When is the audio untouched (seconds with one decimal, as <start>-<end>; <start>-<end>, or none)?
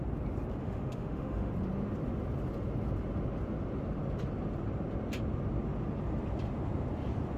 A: 0.0-0.6; 1.5-7.4